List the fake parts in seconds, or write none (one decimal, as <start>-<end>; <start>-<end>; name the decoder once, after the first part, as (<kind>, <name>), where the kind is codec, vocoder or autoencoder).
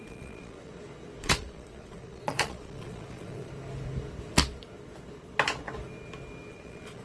0.0-0.7 (vocoder, Vocos); 1.2-3.5; 6.5-7.0